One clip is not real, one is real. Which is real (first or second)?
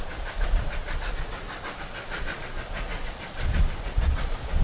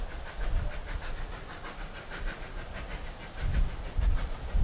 second